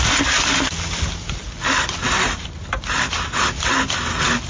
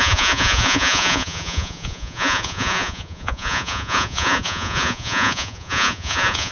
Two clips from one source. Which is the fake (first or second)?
second